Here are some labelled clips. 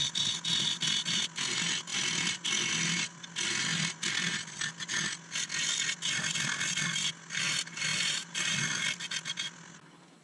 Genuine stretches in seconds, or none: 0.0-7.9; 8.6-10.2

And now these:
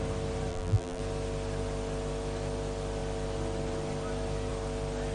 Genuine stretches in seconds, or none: 0.0-0.5; 1.0-5.1